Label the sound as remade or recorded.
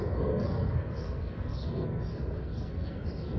remade